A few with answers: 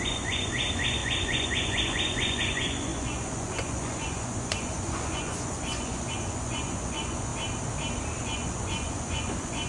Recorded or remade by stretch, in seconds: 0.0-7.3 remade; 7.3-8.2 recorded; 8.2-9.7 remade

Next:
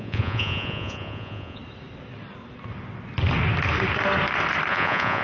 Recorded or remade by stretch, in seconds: 0.0-1.6 remade; 1.6-4.7 recorded; 4.7-5.2 remade

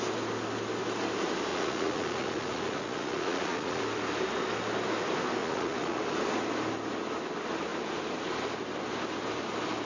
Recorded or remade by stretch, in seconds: 0.0-1.5 recorded; 1.5-3.8 remade; 3.8-5.4 recorded; 5.4-6.0 remade; 6.0-9.8 recorded